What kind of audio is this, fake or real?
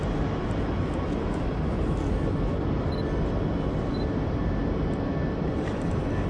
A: real